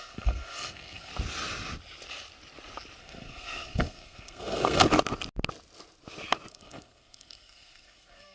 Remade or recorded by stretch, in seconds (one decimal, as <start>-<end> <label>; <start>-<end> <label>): 0.0-1.1 remade; 1.1-3.0 recorded; 3.0-4.8 remade; 4.8-6.5 recorded; 6.5-8.3 remade